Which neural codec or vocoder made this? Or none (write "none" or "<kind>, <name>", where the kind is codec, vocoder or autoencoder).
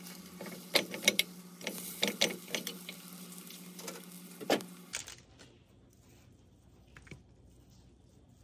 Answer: none